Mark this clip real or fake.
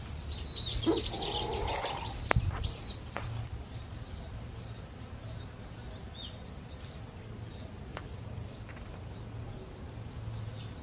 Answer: real